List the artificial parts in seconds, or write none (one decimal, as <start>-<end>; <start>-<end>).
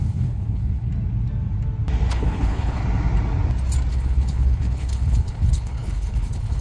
0.0-0.9; 2.1-2.8; 3.9-6.6